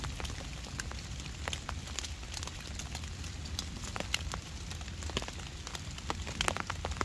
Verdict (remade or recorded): recorded